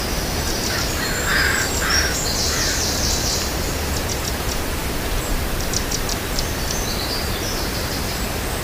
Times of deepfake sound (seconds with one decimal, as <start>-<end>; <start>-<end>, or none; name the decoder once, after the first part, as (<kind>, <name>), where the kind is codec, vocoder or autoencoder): 4.8-7.9 (vocoder, BigVGAN v2)